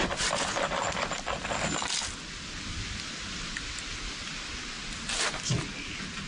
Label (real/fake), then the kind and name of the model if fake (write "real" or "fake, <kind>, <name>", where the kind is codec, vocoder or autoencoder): real